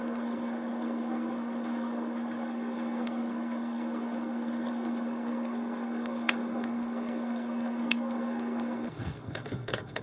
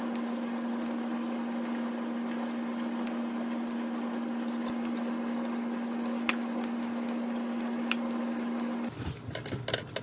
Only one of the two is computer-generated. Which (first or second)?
first